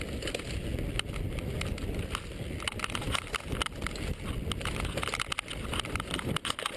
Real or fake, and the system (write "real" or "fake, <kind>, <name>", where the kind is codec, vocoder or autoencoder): real